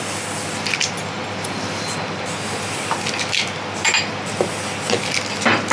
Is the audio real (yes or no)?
yes